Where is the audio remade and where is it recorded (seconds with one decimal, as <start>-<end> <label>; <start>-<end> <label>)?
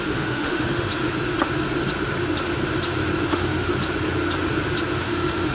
0.0-0.9 remade; 0.9-3.3 recorded; 3.3-3.7 remade; 3.7-5.0 recorded; 5.0-5.5 remade